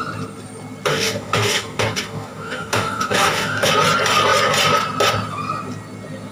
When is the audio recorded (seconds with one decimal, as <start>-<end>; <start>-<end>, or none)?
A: 0.0-0.9; 3.7-6.3

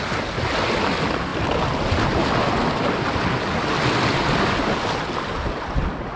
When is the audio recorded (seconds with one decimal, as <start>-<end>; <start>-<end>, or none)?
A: 0.0-6.2

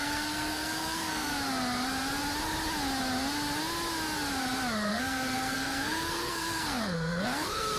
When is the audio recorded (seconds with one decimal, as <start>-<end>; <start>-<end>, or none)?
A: 1.3-4.9

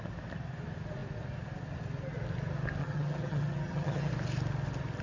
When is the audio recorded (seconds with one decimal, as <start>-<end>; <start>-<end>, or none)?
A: 0.0-2.8; 4.1-5.0

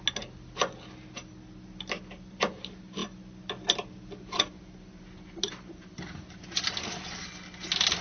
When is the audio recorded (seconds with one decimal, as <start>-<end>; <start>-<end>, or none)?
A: 0.0-8.0